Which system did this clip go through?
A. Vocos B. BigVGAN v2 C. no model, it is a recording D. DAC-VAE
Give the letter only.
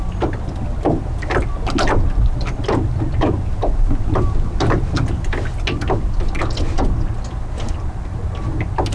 C